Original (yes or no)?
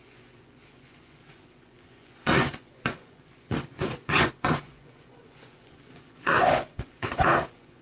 no